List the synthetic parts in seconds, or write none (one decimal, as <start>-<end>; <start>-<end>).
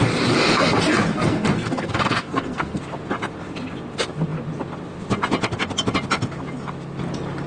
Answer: 1.1-2.8